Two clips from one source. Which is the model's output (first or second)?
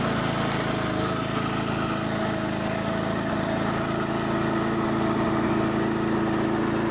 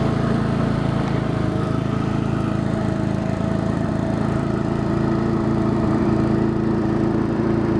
second